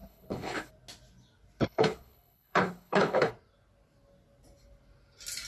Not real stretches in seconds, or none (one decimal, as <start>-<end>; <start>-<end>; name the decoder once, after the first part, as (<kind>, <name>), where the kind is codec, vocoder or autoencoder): 0.0-0.7 (codec, HILCodec); 1.6-3.3